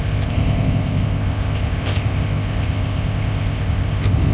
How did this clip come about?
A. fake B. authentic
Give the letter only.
A